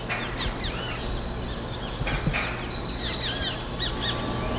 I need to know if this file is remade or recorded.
recorded